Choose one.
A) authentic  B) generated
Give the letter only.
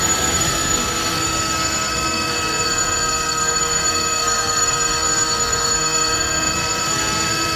B